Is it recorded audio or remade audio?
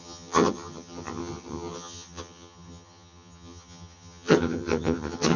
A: remade